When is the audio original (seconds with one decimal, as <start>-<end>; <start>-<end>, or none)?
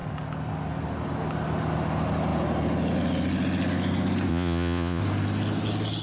0.0-4.3; 5.0-6.0